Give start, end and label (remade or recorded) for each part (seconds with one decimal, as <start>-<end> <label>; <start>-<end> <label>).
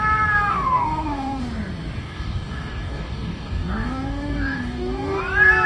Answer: 0.0-0.5 recorded; 0.5-1.4 remade; 1.4-2.0 recorded; 2.0-5.2 remade; 5.2-5.7 recorded